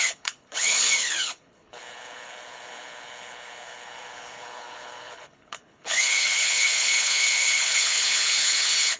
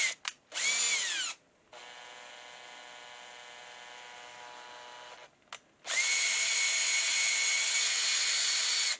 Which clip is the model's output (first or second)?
first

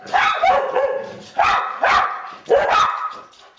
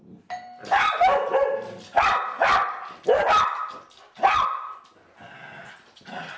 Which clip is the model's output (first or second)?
first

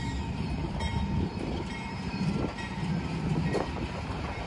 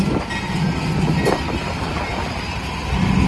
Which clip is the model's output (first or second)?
first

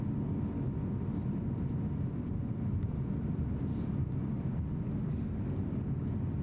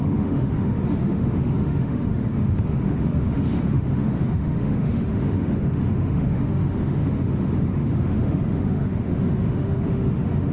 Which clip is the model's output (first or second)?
second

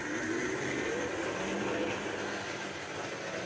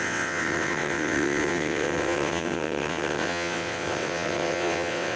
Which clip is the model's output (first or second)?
second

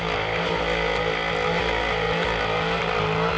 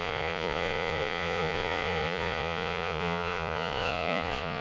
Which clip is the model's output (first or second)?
second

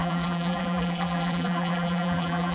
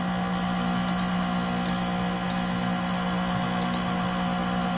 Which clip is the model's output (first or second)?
first